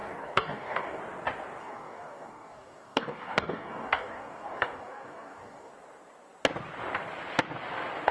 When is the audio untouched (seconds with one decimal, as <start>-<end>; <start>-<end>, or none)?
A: 1.0-1.6; 5.7-8.1